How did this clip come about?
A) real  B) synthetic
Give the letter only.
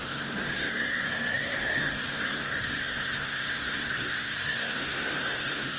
B